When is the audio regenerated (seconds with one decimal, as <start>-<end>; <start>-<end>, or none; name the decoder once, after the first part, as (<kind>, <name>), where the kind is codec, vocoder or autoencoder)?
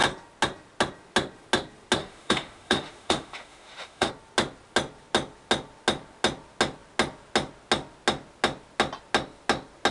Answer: 2.0-4.1 (autoencoder, DAC-VAE)